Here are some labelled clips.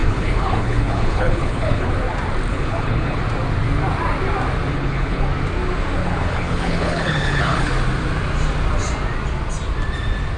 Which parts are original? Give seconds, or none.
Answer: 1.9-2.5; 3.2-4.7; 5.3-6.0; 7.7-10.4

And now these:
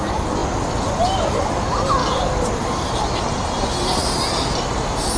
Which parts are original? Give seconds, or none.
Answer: 0.0-5.2

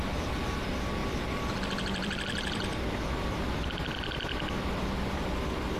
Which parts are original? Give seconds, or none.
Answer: 0.0-1.0; 4.5-5.8

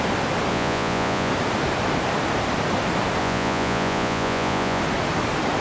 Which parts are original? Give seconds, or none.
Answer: 0.0-0.5; 1.3-3.2; 4.8-5.6

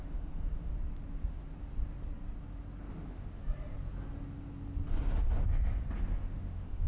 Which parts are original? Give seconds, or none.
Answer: 0.7-2.9; 3.4-6.3

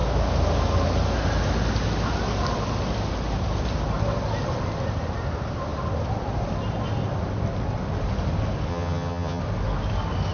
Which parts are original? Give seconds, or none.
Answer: 0.0-8.7; 9.4-10.3

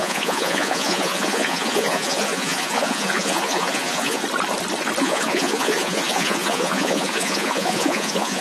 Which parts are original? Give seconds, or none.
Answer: 4.2-5.0